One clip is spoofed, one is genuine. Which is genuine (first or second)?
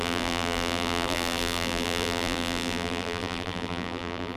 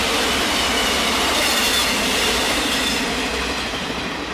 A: second